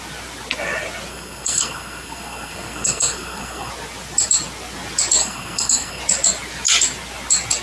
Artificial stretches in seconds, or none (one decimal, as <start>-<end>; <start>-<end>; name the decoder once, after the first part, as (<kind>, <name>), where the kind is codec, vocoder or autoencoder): 1.1-3.7 (codec, SNAC); 5.2-6.0